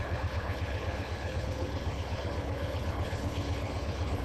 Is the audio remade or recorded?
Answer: remade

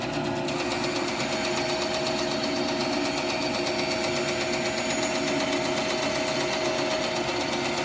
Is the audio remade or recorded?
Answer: recorded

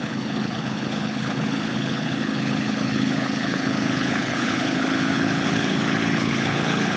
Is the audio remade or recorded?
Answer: remade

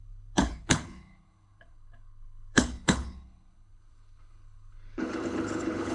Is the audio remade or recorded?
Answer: remade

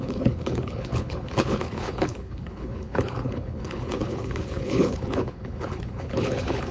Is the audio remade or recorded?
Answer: remade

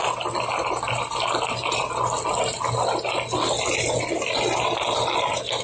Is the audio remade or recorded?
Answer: recorded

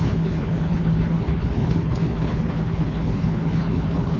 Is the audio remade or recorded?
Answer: remade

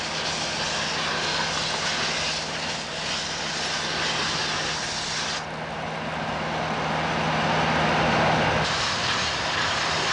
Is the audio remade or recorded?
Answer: recorded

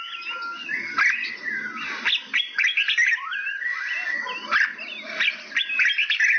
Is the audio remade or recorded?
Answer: recorded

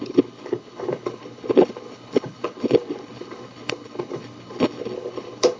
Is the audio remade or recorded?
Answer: remade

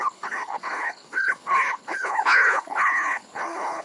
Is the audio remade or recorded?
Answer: remade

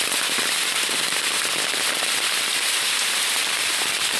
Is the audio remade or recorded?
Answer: recorded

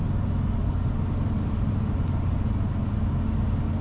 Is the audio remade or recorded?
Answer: recorded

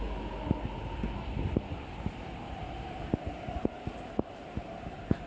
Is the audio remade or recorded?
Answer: recorded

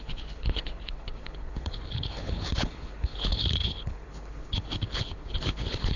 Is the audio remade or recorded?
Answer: remade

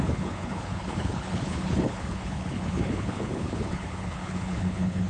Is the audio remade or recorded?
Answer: remade